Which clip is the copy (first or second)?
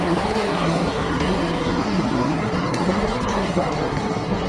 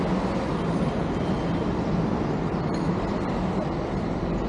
first